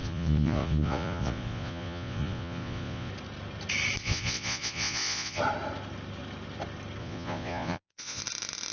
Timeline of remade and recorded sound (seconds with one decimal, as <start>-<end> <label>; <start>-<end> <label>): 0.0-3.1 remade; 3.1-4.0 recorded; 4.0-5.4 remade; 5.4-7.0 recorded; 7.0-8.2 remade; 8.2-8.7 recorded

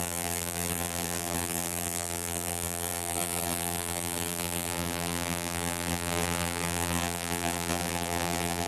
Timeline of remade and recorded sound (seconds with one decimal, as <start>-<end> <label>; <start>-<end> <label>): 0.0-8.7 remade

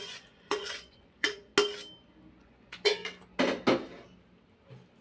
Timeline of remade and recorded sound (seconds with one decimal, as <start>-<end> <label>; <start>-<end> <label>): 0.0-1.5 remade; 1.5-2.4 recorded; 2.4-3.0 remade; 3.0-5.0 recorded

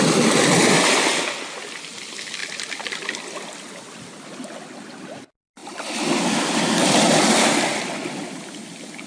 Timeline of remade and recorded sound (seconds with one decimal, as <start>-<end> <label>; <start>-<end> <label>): 0.0-9.1 recorded